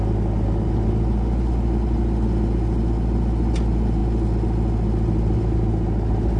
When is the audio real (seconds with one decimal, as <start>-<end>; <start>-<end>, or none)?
0.0-6.4